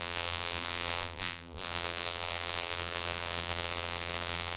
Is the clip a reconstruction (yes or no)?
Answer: yes